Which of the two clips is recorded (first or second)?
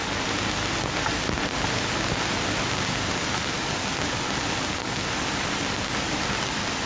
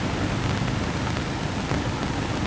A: first